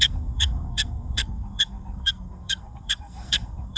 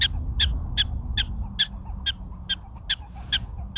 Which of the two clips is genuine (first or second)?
second